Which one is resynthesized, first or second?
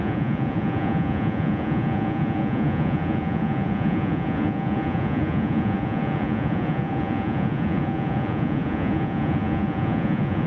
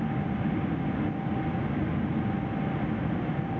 first